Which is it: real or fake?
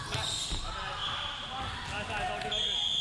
real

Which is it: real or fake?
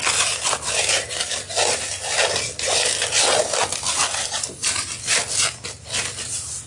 real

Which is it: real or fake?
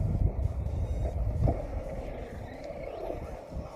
real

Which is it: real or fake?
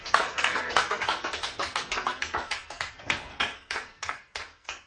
fake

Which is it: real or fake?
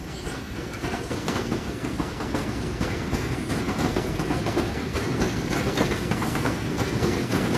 fake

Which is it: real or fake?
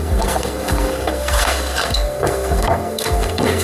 fake